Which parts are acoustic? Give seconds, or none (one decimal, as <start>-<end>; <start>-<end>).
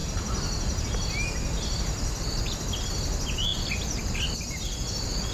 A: 0.8-5.3